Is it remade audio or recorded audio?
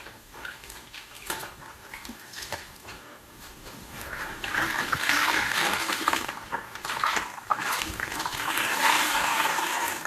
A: remade